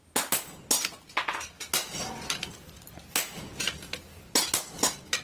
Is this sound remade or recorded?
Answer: recorded